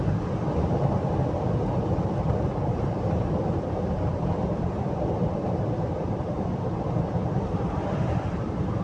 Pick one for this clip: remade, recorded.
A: recorded